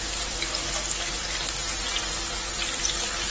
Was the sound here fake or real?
real